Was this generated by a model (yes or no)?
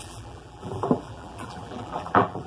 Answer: yes